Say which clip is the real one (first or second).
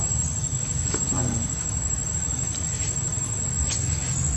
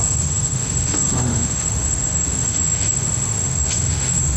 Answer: first